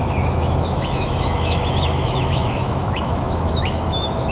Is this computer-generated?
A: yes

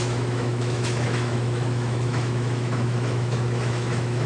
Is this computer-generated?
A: yes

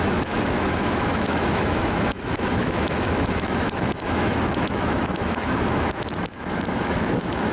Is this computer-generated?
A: yes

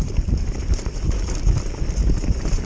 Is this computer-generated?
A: no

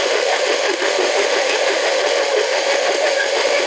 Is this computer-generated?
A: yes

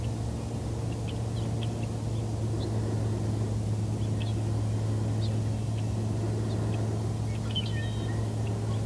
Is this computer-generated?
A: no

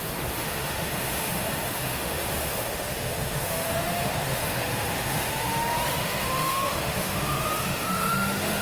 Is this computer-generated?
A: yes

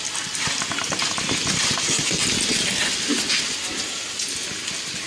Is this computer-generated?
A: no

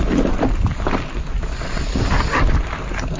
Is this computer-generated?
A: no